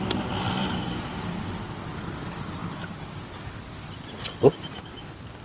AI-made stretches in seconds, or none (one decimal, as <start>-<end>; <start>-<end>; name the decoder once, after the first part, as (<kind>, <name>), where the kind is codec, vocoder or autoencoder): 0.6-1.7 (vocoder, BigVGAN v2)

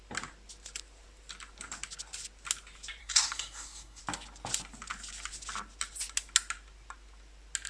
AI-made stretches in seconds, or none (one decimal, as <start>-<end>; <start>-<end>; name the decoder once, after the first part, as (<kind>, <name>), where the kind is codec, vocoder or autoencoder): 3.0-4.0 (codec, SNAC)

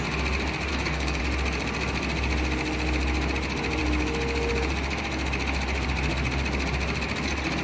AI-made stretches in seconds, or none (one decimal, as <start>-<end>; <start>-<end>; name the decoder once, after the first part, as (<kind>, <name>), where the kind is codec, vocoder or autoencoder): 0.7-1.2 (codec, SNAC)

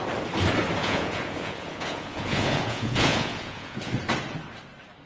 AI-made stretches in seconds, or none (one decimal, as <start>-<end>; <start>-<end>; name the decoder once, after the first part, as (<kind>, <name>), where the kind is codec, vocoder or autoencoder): 0.8-3.9 (vocoder, Vocos)

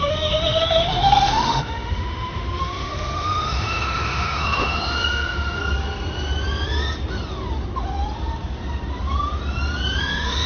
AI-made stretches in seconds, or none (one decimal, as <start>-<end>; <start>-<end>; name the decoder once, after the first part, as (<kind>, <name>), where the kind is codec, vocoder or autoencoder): 0.0-5.6 (autoencoder, DAC-VAE); 10.0-10.5

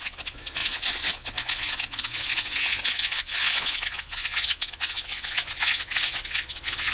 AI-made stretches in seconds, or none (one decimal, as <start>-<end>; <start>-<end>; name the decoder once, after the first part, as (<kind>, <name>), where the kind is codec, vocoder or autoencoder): 0.0-6.9 (vocoder, Vocos)

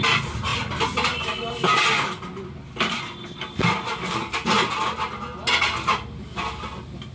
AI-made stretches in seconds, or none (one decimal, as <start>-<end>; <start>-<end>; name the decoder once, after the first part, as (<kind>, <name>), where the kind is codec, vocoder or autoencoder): none

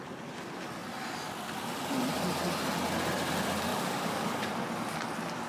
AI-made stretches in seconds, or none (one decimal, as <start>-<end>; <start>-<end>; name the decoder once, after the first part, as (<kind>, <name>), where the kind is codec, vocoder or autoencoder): 3.7-4.5 (codec, DAC)